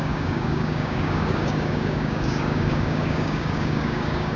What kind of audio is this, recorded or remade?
remade